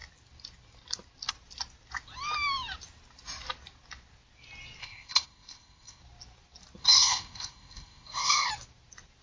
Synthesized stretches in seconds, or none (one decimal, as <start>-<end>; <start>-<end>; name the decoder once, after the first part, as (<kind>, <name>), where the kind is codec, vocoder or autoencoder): 4.8-6.0 (codec, ZipCodec); 6.8-8.5